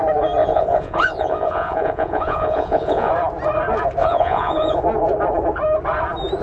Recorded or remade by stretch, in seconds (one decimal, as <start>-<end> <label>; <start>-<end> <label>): 0.0-0.4 recorded; 0.4-3.1 remade; 3.1-4.0 recorded; 4.0-4.8 remade; 4.8-6.4 recorded